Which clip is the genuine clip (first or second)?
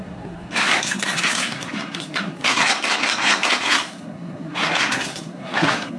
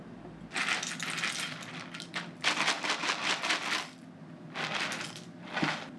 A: second